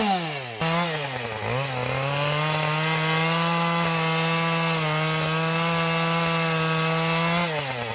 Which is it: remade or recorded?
recorded